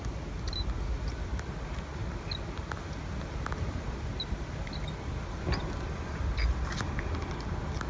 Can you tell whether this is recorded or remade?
recorded